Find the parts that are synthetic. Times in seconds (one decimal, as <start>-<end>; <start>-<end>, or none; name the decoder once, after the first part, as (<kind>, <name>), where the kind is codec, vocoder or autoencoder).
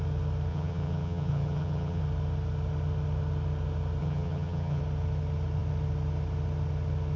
0.5-2.0 (vocoder, HiFi-GAN); 4.0-4.8